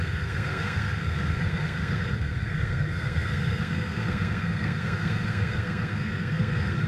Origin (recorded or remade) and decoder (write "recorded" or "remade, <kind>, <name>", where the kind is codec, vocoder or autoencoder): remade, codec, SNAC